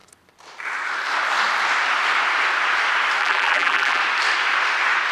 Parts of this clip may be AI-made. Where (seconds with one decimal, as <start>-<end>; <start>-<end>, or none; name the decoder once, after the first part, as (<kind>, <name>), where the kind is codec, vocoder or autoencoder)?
3.2-4.0 (vocoder, BigVGAN v2)